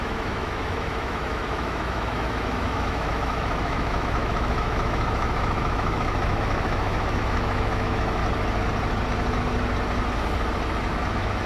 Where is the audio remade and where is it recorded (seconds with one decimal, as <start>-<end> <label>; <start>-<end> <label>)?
0.0-8.2 remade; 8.2-11.1 recorded; 11.1-11.5 remade